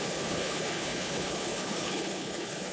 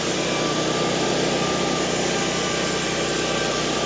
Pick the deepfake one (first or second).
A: first